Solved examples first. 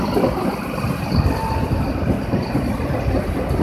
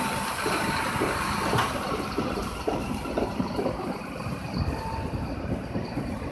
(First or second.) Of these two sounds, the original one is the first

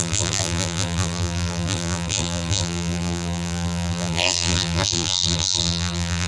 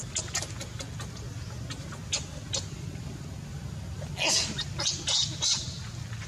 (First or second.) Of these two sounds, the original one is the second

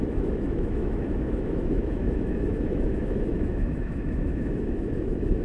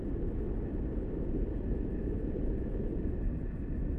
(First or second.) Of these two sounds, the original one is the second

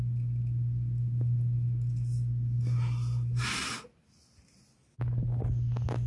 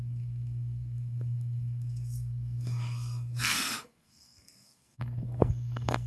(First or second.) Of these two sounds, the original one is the first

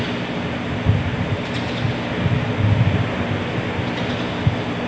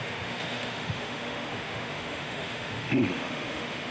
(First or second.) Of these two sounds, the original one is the first